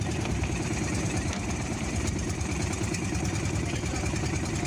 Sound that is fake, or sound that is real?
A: fake